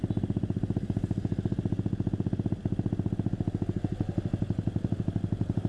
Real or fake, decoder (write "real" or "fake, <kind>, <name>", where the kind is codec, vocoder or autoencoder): real